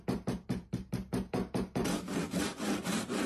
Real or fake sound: fake